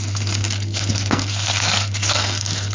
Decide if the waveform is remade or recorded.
remade